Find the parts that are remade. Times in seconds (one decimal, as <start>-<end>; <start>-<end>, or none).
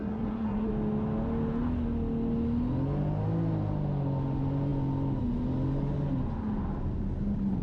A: 0.0-0.7